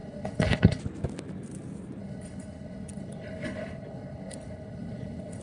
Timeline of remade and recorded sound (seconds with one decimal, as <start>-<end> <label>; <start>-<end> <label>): 0.0-0.8 remade; 0.8-2.0 recorded; 2.0-5.4 remade